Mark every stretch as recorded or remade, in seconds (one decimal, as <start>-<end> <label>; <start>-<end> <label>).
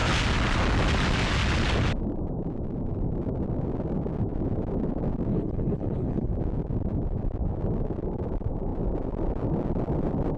0.0-5.3 recorded; 5.3-6.3 remade; 6.3-10.4 recorded